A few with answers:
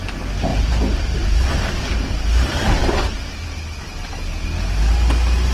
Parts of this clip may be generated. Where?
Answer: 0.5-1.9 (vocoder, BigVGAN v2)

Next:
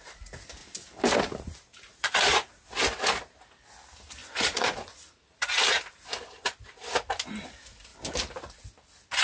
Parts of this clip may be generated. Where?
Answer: 1.7-2.5 (vocoder, Vocos); 4.2-5.8

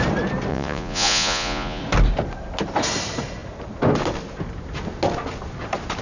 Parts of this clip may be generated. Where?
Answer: 0.5-1.8 (vocoder, Vocos)

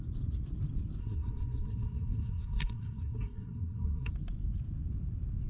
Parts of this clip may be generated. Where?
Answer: 1.0-4.1 (codec, SNAC)

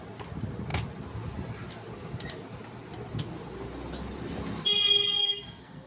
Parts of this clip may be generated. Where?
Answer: 5.2-5.9 (codec, SNAC)